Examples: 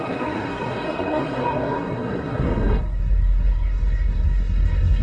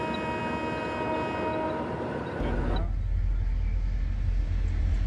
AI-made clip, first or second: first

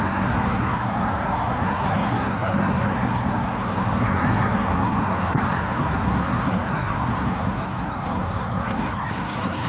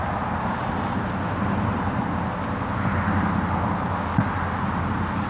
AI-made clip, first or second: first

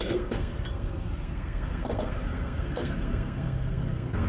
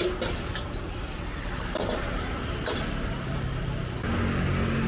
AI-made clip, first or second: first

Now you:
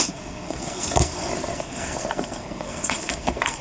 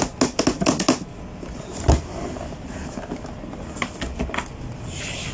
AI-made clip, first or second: first